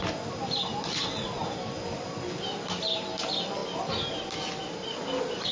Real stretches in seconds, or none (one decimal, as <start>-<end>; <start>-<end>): 0.0-5.5